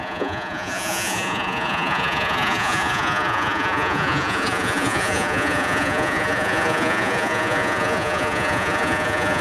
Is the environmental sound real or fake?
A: fake